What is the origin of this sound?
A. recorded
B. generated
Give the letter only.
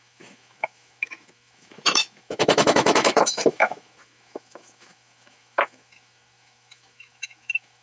B